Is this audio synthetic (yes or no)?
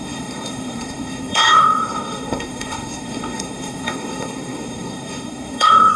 yes